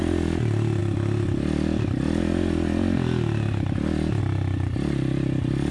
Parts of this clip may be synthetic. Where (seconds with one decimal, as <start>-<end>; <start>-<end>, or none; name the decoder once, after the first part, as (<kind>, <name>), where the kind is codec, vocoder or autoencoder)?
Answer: none

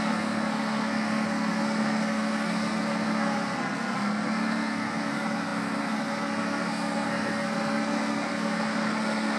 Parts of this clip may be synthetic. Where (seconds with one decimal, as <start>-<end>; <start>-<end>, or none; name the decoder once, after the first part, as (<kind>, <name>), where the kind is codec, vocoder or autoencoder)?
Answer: 0.0-9.4 (codec, SNAC)